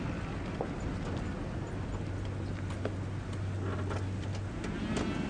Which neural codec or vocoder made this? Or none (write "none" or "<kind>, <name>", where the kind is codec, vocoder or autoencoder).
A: none